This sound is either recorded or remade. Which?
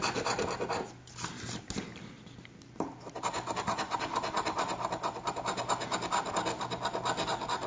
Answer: recorded